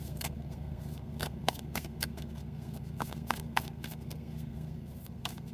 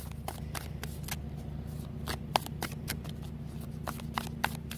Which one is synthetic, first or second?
first